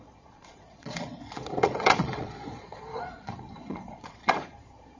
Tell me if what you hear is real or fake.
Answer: fake